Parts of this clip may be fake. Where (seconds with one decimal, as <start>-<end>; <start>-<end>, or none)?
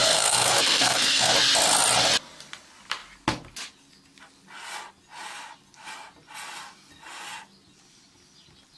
0.0-1.3